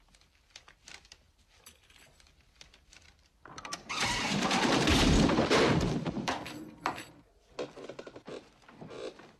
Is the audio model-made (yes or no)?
yes